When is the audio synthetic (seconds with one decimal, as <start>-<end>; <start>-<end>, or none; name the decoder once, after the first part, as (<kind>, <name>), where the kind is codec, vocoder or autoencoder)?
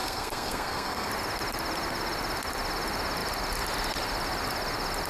0.0-1.1 (codec, SNAC)